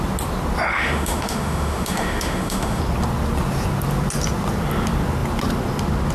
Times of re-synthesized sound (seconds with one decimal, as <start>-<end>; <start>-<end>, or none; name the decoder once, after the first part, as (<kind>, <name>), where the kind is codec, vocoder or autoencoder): 0.7-2.8 (autoencoder, DAC-VAE)